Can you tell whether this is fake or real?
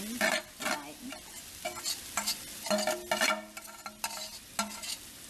real